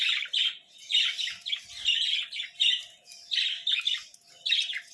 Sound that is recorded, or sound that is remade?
recorded